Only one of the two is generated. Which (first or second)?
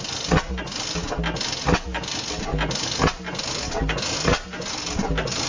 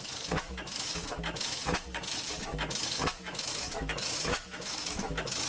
second